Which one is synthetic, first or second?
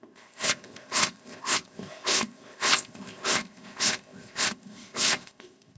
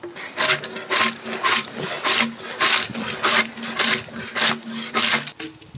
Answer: first